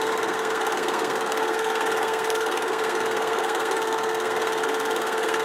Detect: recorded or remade remade